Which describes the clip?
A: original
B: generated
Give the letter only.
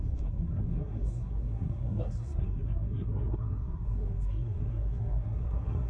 B